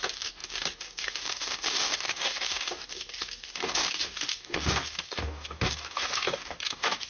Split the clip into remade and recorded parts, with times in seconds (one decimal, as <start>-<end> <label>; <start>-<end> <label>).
0.0-7.1 remade